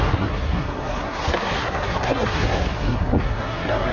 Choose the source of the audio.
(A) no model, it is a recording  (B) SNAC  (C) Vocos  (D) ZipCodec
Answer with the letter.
B